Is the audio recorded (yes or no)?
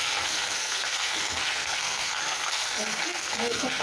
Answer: no